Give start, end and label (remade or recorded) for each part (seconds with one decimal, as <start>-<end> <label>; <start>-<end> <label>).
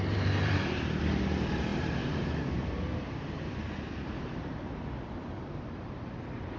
0.0-6.6 remade